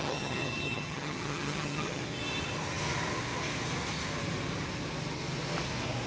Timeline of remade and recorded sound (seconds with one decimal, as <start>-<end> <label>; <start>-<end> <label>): 0.0-2.0 remade; 2.0-6.1 recorded